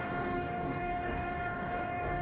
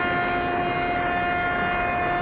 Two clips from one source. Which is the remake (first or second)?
first